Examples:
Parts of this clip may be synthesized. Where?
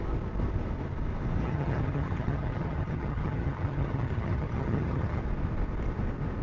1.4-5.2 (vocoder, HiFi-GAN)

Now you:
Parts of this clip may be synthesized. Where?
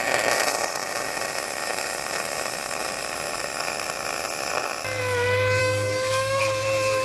5.6-6.4 (codec, DAC)